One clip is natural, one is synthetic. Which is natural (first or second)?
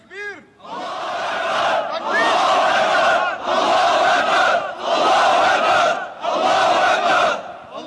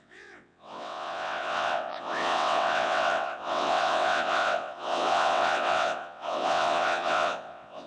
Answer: first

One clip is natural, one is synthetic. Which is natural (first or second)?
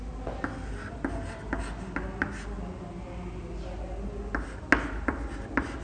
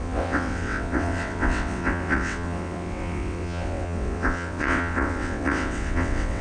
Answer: first